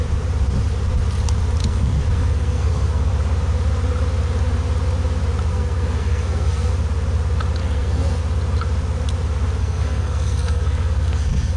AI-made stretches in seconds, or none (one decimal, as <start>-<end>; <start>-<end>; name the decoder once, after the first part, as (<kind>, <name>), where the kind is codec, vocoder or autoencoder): 1.6-3.1 (codec, SNAC); 5.5-6.7; 7.6-8.2; 9.6-11.6